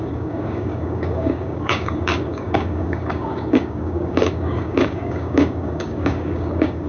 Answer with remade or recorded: remade